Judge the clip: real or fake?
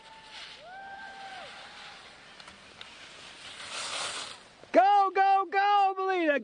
real